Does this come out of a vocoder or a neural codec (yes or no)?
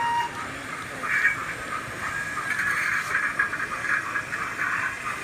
no